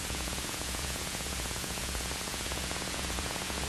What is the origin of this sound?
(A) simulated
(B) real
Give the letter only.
A